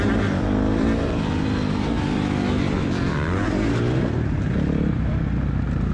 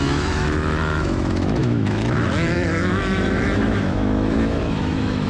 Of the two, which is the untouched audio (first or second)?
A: first